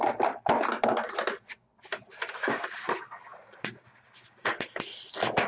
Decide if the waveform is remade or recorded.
recorded